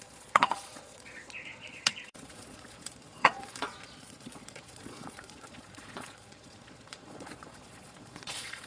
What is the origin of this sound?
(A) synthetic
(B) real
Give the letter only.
A